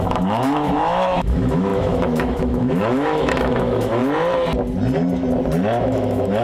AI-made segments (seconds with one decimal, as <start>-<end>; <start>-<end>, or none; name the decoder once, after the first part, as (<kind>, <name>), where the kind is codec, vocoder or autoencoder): 0.0-4.0 (autoencoder, DAC-VAE); 5.8-6.4